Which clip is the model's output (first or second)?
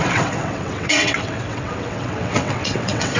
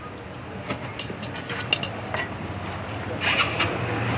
first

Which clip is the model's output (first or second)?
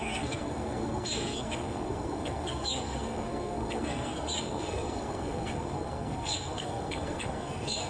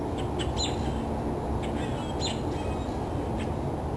first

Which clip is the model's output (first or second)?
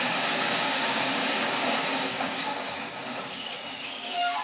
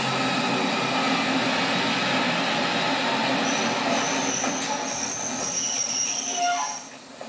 first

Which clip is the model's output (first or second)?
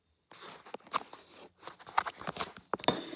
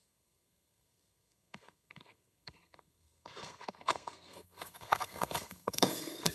second